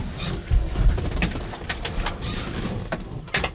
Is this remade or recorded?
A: remade